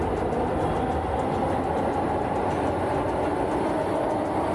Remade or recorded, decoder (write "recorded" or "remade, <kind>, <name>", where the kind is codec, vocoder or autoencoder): recorded